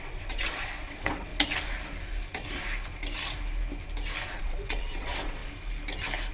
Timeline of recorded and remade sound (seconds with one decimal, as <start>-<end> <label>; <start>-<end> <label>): 0.0-1.3 remade; 1.3-4.4 recorded; 4.4-5.4 remade; 5.4-6.3 recorded